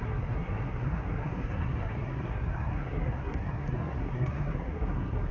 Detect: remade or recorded remade